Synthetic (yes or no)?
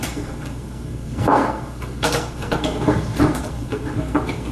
yes